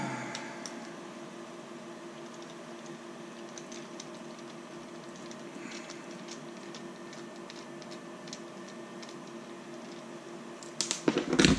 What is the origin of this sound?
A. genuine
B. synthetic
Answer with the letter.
A